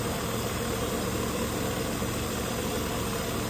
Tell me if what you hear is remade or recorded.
recorded